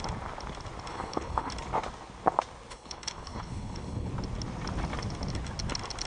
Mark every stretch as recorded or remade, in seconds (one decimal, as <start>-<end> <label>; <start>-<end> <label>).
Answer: 0.0-0.9 recorded; 0.9-1.5 remade; 1.5-2.7 recorded; 2.7-4.1 remade; 4.1-6.1 recorded